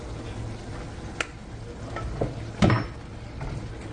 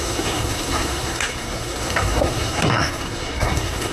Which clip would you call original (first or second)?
first